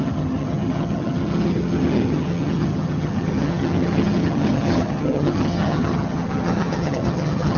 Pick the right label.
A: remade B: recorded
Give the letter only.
A